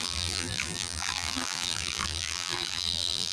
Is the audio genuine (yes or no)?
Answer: no